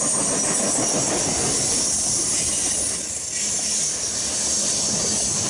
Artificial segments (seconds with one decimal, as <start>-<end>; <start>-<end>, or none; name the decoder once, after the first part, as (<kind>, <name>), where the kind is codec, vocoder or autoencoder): none